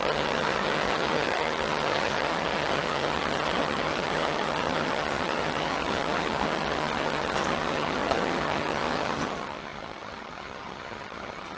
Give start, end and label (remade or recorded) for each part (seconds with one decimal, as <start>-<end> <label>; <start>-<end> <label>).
0.0-11.6 remade